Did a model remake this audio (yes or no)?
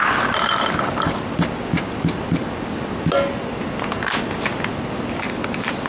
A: no